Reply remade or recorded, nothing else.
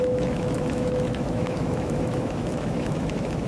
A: remade